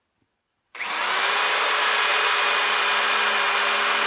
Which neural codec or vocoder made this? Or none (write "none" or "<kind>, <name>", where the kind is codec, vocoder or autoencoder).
none